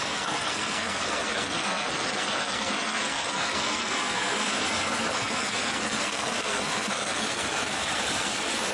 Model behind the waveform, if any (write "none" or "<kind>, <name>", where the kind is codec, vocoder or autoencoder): codec, SNAC